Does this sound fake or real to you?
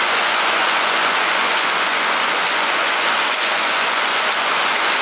fake